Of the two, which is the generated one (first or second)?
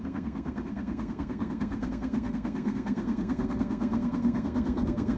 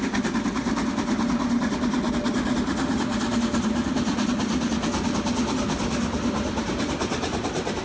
first